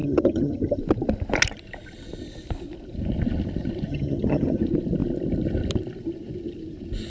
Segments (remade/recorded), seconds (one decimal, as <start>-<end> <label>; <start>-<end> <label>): 0.0-0.8 remade; 0.8-3.9 recorded; 3.9-4.6 remade; 4.6-7.1 recorded